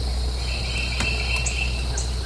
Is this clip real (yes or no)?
yes